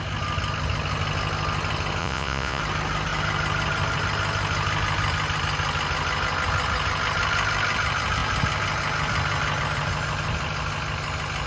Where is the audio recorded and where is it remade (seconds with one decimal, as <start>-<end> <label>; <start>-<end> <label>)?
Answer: 0.0-2.0 recorded; 2.0-2.6 remade; 2.6-11.5 recorded